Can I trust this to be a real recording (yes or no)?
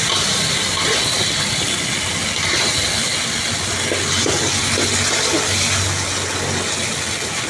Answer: yes